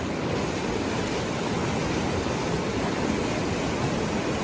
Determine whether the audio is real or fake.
real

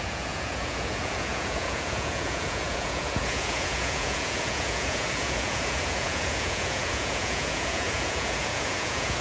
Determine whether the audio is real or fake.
fake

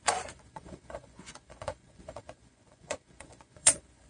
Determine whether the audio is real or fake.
fake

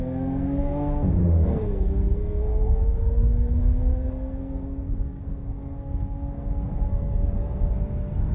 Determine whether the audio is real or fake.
fake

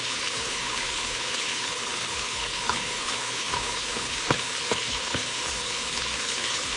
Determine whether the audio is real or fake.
fake